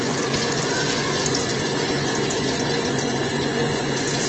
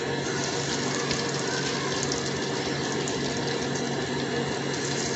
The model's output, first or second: first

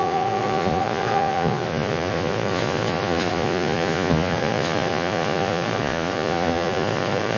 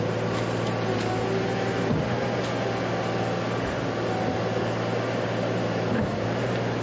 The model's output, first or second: first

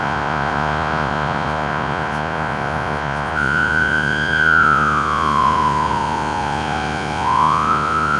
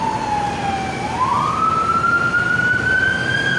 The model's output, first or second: first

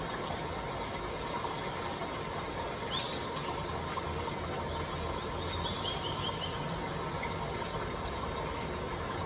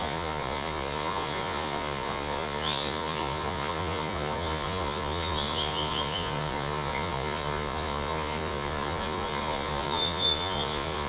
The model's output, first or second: second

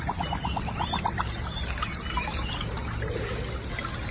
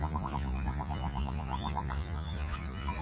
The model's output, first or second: second